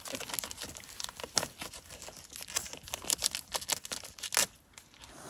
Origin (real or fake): real